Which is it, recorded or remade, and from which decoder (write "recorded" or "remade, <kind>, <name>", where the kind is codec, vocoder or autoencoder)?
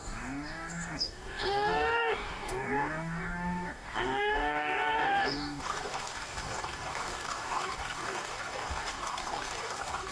remade, codec, DAC